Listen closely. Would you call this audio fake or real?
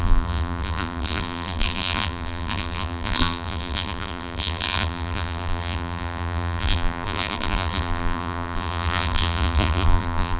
fake